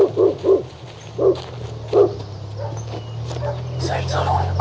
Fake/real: real